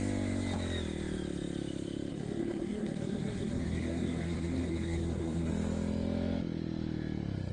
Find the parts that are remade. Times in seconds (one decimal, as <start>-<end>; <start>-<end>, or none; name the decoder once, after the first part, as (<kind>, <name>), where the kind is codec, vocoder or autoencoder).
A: 2.1-5.5 (codec, SNAC)